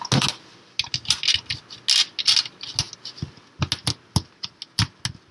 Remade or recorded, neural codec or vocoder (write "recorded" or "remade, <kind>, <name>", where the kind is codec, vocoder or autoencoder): recorded